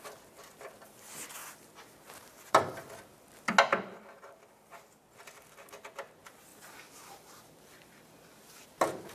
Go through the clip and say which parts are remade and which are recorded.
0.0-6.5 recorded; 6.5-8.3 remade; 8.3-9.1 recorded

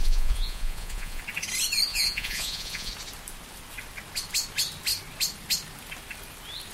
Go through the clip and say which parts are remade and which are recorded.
0.0-1.2 remade; 1.2-1.9 recorded; 1.9-2.9 remade; 2.9-6.7 recorded